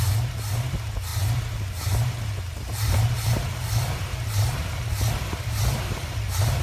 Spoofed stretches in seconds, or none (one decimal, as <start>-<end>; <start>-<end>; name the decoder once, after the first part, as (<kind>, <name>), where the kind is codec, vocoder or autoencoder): none